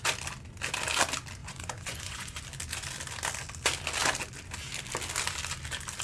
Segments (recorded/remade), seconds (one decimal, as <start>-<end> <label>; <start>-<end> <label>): 0.0-1.4 recorded; 1.4-2.4 remade; 2.4-6.0 recorded